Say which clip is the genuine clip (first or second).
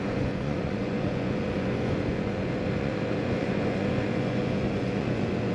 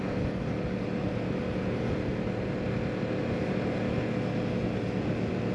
second